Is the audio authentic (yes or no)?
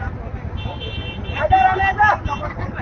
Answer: yes